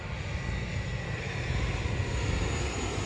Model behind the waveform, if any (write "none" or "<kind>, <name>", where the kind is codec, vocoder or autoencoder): none